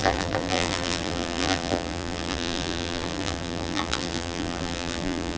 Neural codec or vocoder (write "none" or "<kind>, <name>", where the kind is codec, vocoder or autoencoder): vocoder, BigVGAN v2